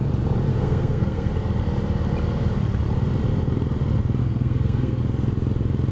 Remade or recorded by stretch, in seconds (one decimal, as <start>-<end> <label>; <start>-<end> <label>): 0.0-0.5 recorded; 0.5-1.3 remade; 1.3-4.2 recorded; 4.2-5.0 remade; 5.0-5.9 recorded